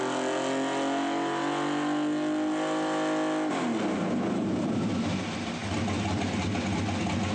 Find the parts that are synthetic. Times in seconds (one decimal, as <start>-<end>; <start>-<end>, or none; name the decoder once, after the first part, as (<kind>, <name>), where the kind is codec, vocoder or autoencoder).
none